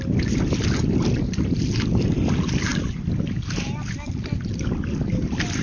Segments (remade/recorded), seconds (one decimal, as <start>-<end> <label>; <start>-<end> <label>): 0.0-5.6 recorded